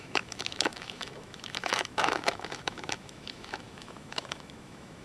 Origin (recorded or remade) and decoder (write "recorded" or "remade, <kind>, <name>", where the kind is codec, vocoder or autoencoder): remade, autoencoder, DAC-VAE